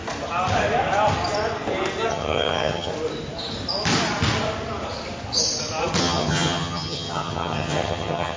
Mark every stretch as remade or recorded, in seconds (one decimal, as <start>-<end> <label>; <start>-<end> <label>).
0.0-2.1 recorded; 2.1-2.9 remade; 2.9-6.0 recorded; 6.0-8.4 remade